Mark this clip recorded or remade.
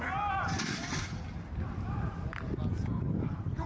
recorded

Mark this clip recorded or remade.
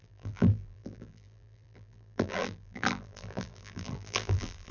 remade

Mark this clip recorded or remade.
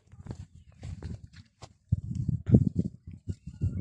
remade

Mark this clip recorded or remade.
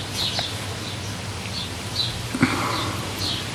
recorded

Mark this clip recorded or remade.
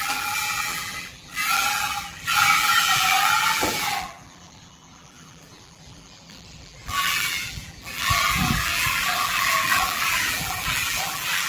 remade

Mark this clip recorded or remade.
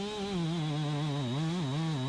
recorded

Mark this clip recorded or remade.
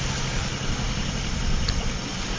recorded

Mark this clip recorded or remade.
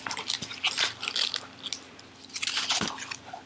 recorded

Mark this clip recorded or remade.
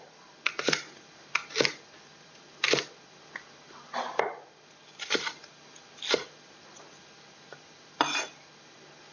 remade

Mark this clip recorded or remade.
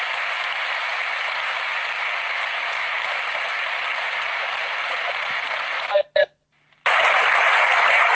recorded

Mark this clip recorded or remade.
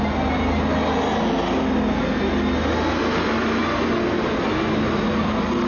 recorded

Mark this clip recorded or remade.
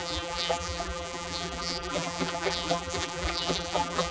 remade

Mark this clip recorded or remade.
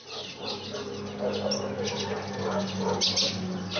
recorded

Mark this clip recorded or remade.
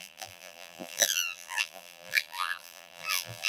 remade